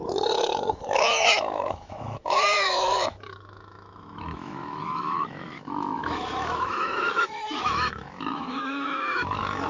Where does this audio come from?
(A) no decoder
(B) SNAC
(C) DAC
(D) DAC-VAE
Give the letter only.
D